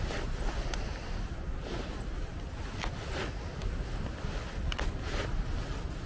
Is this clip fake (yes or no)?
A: no